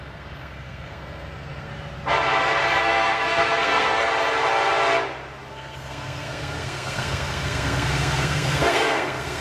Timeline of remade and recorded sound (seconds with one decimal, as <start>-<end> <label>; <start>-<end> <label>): 0.0-1.7 remade; 1.7-2.8 recorded; 2.8-4.1 remade; 4.1-5.5 recorded; 5.5-9.4 remade